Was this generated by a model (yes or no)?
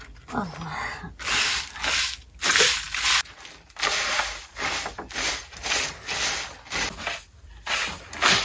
no